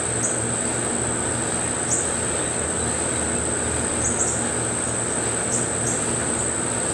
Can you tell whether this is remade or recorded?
recorded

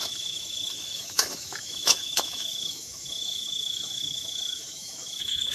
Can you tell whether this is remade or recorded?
remade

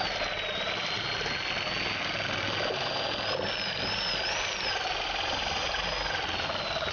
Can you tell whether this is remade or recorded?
recorded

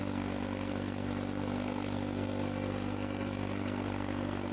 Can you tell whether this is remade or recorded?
remade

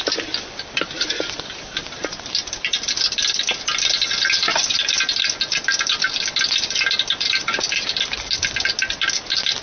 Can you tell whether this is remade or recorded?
recorded